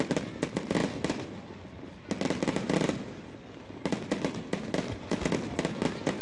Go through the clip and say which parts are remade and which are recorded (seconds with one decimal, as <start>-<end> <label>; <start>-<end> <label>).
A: 0.0-6.2 recorded